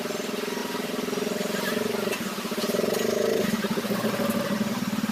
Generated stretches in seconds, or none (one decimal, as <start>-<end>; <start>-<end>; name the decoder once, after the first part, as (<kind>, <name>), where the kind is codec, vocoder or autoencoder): none